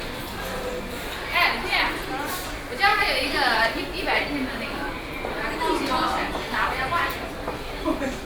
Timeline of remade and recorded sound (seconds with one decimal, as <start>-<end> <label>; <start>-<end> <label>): 0.0-2.9 recorded; 2.9-3.8 remade; 3.8-8.2 recorded